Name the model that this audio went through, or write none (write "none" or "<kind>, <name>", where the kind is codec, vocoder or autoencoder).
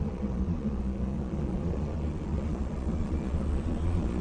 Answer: vocoder, Vocos